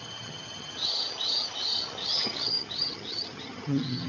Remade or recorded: remade